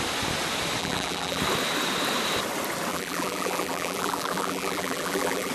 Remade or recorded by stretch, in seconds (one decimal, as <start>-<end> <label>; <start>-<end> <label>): 0.0-0.8 recorded; 0.8-1.4 remade; 1.4-2.9 recorded; 2.9-5.5 remade